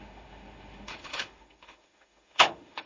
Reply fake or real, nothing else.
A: fake